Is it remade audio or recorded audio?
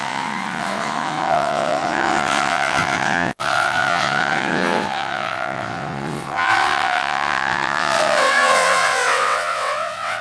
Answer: remade